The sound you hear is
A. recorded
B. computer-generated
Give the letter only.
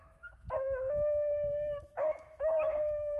B